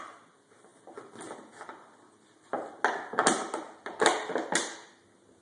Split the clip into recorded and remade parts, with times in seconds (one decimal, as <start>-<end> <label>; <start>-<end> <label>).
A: 0.0-2.5 remade; 2.5-3.9 recorded; 3.9-5.4 remade